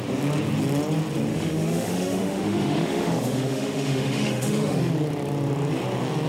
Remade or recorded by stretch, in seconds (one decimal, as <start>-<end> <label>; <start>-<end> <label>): 0.0-1.3 recorded; 1.3-4.9 remade; 4.9-6.3 recorded